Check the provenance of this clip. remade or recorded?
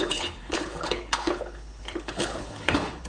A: remade